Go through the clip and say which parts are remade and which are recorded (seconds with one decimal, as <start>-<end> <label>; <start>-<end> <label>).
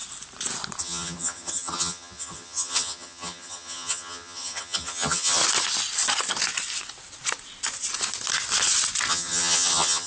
0.0-0.8 recorded; 0.8-5.4 remade; 5.4-9.1 recorded; 9.1-10.1 remade